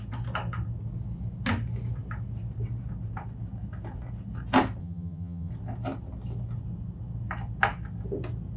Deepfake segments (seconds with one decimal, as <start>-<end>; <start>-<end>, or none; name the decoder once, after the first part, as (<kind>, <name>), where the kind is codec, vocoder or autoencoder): 4.8-5.5 (vocoder, HiFi-GAN)